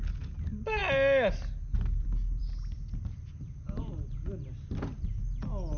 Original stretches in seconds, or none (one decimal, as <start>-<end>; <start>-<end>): 0.0-5.8